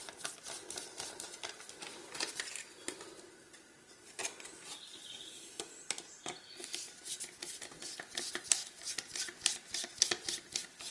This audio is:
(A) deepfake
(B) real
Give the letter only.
B